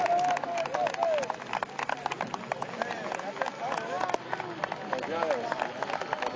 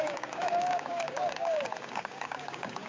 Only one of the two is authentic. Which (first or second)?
first